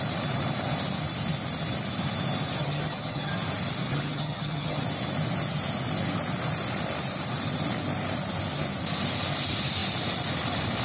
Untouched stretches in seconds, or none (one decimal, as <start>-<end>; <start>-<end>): 0.0-2.6; 3.3-3.8; 4.8-10.8